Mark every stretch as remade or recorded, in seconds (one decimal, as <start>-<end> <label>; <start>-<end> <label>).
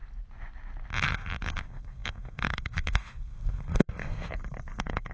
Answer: 0.0-1.0 recorded; 1.0-5.1 remade